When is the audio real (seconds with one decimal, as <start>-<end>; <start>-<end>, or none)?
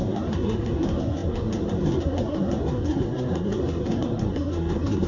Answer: none